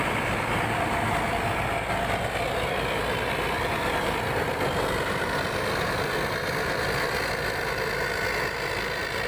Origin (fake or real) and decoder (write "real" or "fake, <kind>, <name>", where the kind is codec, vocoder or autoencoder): real